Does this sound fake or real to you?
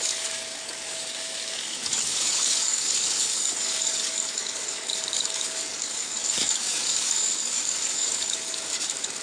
fake